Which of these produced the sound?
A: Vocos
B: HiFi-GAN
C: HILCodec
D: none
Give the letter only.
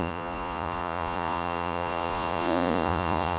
A